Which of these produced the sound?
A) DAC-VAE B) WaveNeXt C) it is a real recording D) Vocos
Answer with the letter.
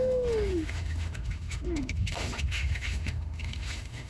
A